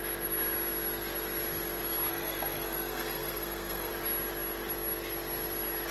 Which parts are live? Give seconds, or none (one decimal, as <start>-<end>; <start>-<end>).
0.0-2.1; 3.9-5.9